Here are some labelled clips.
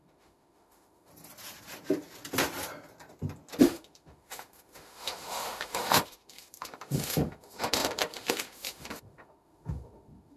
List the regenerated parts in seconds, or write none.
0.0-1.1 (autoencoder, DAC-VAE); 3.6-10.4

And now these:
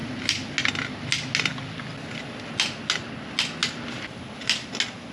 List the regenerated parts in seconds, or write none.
none

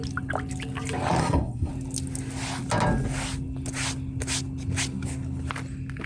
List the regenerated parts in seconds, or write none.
1.2-1.7 (codec, SNAC)

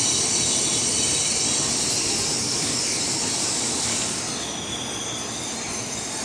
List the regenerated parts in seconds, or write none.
2.4-3.0 (codec, DAC); 3.4-4.2